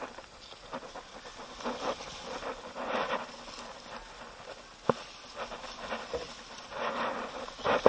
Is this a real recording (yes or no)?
yes